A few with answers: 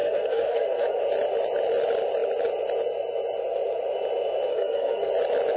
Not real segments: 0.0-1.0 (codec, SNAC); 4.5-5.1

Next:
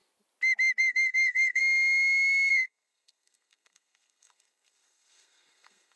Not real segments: 0.8-1.6 (codec, SNAC); 2.5-6.0

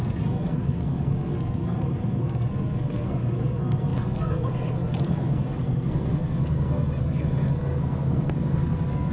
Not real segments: 0.0-9.1 (codec, SNAC)

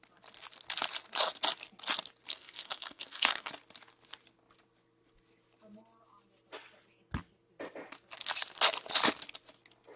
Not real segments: 2.3-3.5 (codec, SNAC)

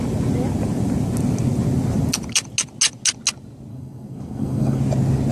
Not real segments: 3.7-4.8 (codec, SNAC)